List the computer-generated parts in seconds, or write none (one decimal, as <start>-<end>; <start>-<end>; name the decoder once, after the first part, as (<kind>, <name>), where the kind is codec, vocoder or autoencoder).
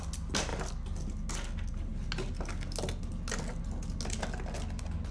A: none